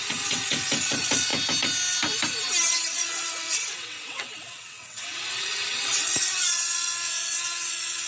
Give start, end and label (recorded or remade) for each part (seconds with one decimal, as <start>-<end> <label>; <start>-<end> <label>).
0.0-1.3 remade; 1.3-2.9 recorded; 2.9-8.1 remade